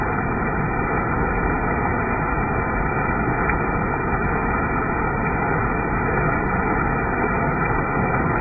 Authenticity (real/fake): real